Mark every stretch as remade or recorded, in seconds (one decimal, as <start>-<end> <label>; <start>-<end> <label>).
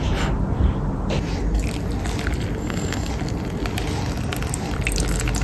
0.0-2.6 recorded; 2.6-3.1 remade; 3.1-5.4 recorded